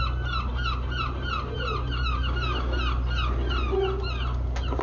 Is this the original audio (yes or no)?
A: yes